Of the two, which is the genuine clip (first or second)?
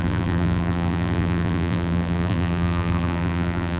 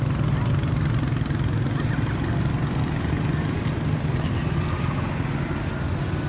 second